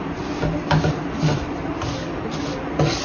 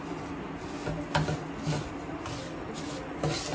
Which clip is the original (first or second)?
second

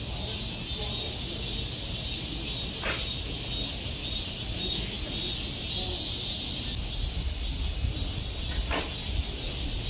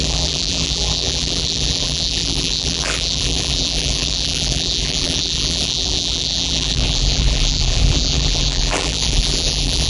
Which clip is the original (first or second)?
first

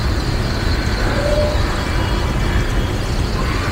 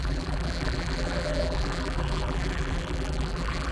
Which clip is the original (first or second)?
first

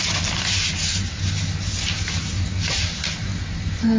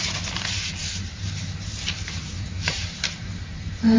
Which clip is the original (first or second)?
first